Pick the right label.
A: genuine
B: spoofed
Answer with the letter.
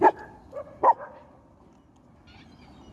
A